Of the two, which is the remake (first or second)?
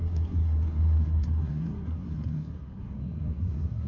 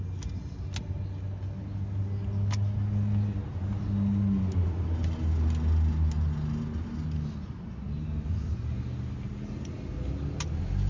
first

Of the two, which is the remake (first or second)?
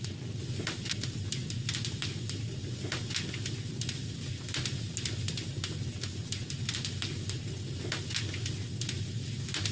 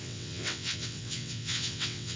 second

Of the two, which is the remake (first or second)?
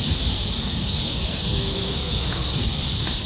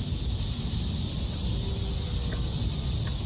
first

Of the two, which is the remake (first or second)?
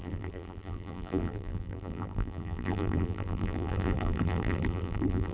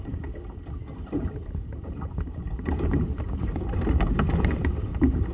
first